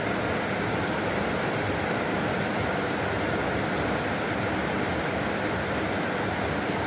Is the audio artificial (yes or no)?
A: no